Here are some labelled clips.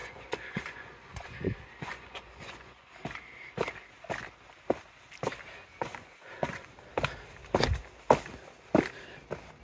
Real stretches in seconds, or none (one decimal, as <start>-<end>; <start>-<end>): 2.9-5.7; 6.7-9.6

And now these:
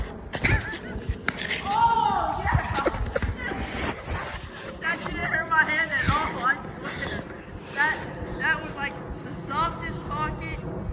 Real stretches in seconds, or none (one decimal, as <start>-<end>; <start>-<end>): 0.0-3.4; 3.9-10.9

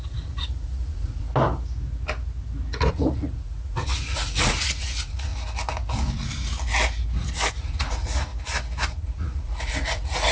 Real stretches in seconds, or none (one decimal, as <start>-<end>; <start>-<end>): 1.3-2.9; 5.3-7.5; 8.3-8.9